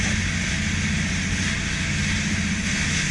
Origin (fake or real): real